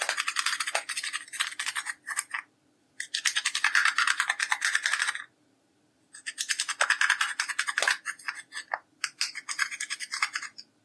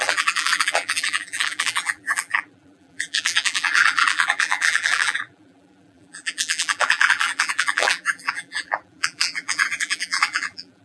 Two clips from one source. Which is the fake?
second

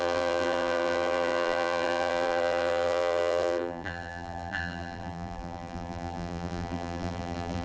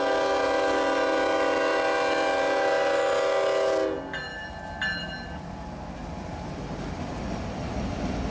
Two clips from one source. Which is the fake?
first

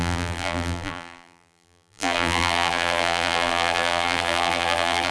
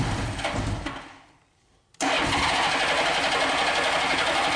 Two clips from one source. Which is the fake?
first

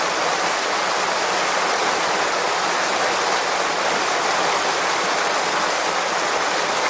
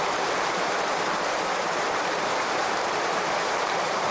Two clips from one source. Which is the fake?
second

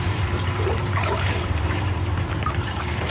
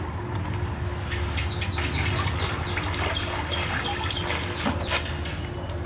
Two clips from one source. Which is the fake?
first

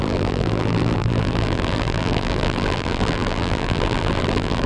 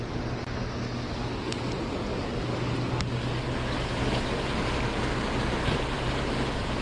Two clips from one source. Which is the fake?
first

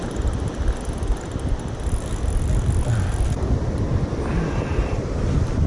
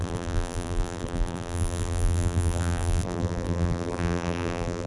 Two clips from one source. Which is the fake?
second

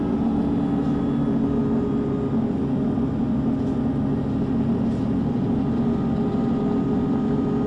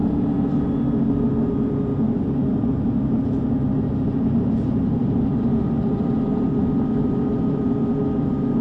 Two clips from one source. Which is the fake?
second